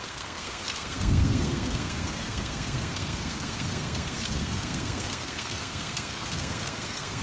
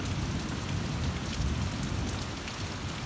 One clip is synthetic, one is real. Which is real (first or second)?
second